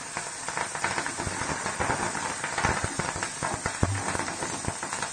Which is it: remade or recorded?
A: recorded